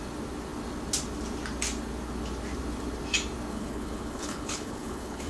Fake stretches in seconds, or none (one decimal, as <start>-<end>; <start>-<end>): 3.5-5.3